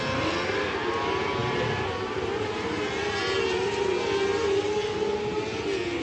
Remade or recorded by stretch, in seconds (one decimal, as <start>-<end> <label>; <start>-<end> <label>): 0.0-6.0 recorded